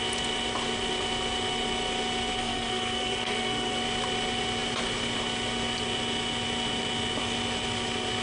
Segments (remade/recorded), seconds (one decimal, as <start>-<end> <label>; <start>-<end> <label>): 0.0-2.4 recorded; 2.4-3.8 remade; 3.8-8.2 recorded